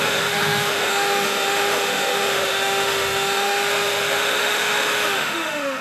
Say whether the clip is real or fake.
fake